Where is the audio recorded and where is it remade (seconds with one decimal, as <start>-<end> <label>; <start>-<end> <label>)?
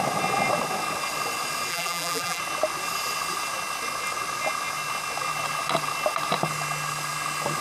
0.0-1.7 recorded; 1.7-2.4 remade; 2.4-7.6 recorded